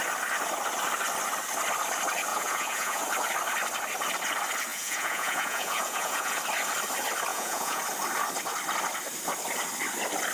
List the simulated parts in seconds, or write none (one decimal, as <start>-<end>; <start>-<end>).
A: 2.3-3.0; 4.7-6.4; 7.3-7.8